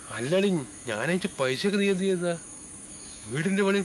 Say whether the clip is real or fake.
fake